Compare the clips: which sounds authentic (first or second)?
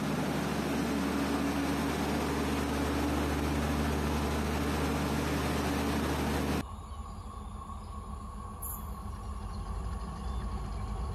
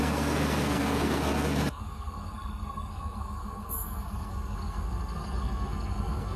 first